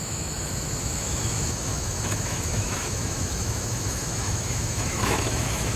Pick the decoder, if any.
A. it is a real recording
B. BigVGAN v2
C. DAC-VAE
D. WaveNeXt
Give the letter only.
C